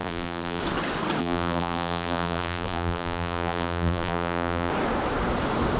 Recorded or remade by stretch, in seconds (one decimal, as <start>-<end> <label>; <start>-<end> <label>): 0.0-0.6 remade; 0.6-1.2 recorded; 1.2-4.7 remade; 4.7-5.8 recorded